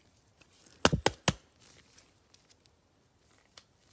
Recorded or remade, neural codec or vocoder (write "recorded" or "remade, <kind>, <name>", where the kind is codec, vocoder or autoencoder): recorded